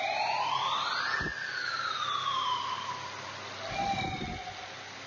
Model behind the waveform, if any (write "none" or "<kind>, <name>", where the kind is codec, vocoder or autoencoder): none